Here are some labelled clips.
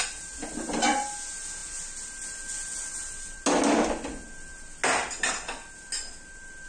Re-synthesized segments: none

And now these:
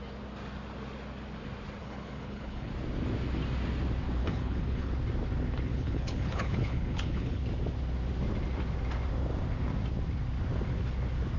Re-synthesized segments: 1.8-2.7; 4.2-4.9; 5.7-7.4

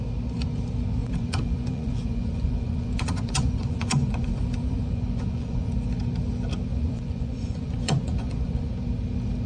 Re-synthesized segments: 1.0-5.7; 6.7-8.7

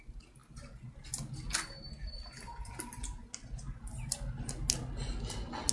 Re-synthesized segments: none

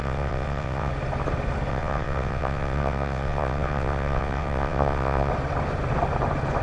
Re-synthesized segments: 0.0-0.9; 1.7-5.3

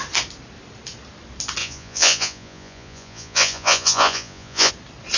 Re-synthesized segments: 1.6-4.7

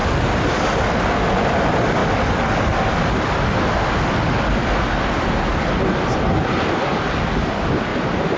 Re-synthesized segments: none